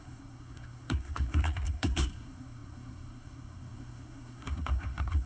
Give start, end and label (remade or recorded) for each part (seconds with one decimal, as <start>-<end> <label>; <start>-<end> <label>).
0.0-5.3 remade